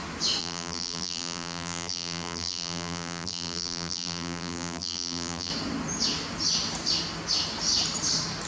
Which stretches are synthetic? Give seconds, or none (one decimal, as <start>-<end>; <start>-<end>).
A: 0.4-5.5